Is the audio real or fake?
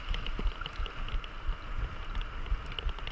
real